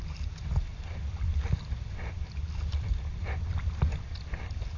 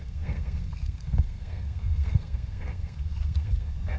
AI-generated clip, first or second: second